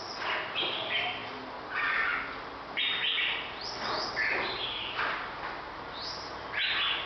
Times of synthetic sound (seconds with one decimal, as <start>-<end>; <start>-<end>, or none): none